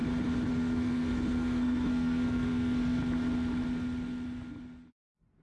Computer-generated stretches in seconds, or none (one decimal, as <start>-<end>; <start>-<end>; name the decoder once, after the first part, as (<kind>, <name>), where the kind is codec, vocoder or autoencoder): 0.5-3.0 (codec, SNAC); 4.9-5.4